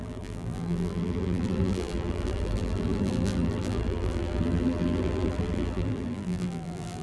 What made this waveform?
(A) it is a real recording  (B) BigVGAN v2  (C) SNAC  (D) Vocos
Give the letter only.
B